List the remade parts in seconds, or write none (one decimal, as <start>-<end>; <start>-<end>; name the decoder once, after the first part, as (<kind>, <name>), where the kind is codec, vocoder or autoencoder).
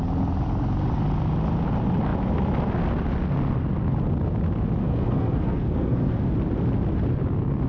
4.8-6.3 (codec, SNAC)